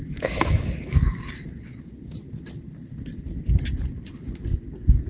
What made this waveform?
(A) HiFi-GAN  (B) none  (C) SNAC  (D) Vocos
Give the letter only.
B